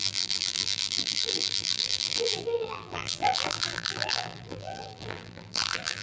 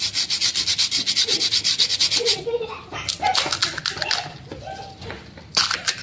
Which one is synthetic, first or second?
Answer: first